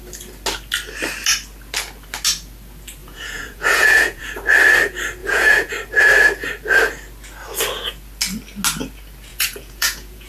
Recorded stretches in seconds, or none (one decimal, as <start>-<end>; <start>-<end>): 0.0-3.0; 4.2-5.2; 5.7-9.3

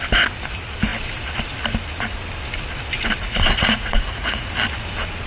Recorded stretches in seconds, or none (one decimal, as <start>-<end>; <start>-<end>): 0.0-3.2; 4.5-5.3

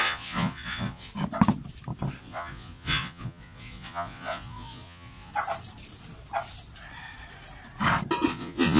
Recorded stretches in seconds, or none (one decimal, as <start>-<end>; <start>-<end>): 1.1-2.2; 5.3-8.3

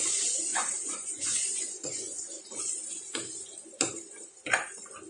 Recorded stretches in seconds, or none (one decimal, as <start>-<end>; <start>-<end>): 0.0-0.5; 2.4-5.1

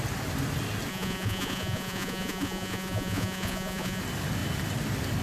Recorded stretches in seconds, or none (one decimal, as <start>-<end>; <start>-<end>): 0.0-0.9; 4.0-5.2

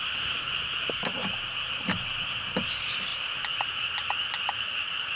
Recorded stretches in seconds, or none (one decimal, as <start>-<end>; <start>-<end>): 0.0-5.2

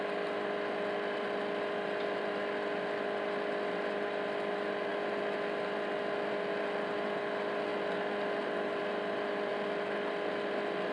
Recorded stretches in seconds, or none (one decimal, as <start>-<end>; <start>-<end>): 0.0-10.9